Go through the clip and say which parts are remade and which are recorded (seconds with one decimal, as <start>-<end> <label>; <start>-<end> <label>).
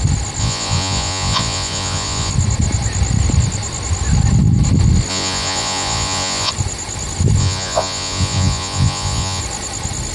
0.0-0.4 recorded; 0.4-2.3 remade; 2.3-5.1 recorded; 5.1-6.5 remade; 6.5-7.4 recorded; 7.4-9.4 remade; 9.4-10.1 recorded